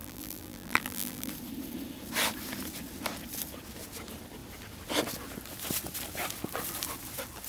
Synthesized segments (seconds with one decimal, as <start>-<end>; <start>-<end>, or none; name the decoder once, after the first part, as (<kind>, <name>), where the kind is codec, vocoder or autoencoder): 0.0-1.3 (vocoder, BigVGAN v2)